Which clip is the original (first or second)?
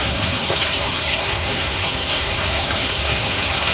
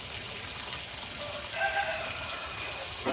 second